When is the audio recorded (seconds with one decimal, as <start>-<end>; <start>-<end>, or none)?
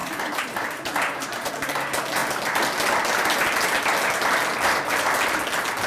1.5-5.9